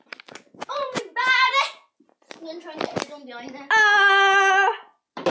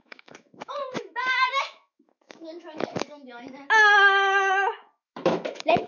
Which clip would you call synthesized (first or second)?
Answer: second